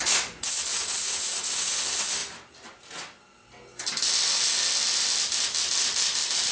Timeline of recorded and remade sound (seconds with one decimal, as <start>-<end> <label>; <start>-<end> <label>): 0.0-0.7 recorded; 0.7-1.7 remade; 1.7-6.5 recorded